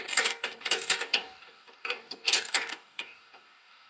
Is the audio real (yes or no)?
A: no